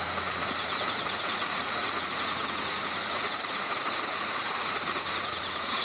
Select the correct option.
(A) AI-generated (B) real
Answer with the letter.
A